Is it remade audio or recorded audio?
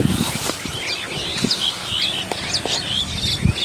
recorded